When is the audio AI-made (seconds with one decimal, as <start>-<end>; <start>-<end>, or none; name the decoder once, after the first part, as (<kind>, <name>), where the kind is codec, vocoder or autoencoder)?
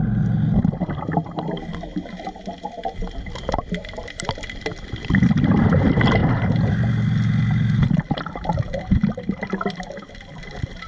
3.0-5.3 (vocoder, BigVGAN v2)